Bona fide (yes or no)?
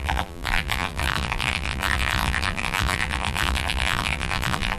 no